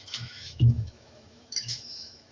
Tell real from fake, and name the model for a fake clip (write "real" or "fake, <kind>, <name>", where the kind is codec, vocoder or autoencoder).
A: fake, autoencoder, DAC-VAE